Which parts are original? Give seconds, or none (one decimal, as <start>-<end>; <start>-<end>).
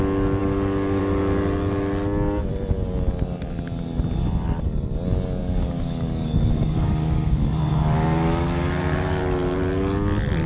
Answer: 0.0-0.4; 1.0-5.4; 9.2-10.5